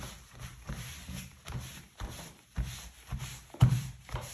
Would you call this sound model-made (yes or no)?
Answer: yes